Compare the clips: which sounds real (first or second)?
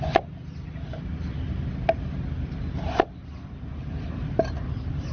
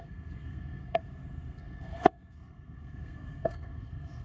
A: first